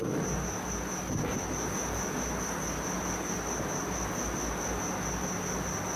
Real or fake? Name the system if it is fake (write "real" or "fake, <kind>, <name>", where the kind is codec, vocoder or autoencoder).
real